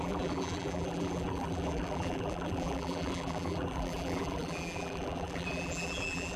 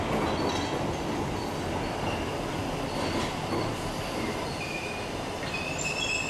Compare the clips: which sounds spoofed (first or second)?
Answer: first